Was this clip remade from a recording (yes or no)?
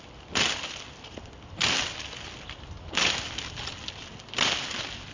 no